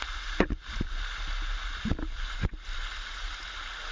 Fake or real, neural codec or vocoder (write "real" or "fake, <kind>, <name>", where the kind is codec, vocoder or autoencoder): real